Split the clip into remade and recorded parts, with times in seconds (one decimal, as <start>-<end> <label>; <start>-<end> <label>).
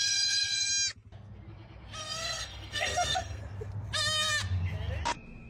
0.0-0.7 remade; 0.7-2.0 recorded; 2.0-3.4 remade; 3.4-5.5 recorded